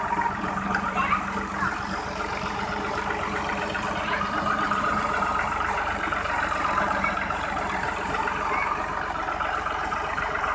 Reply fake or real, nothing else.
fake